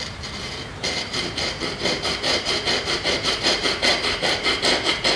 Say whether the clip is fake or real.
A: fake